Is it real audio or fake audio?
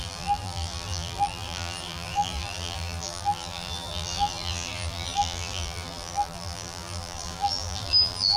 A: fake